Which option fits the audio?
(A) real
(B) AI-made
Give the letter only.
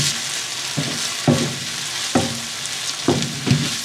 A